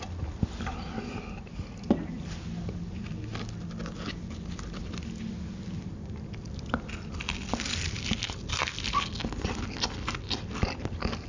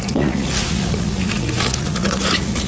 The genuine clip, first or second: first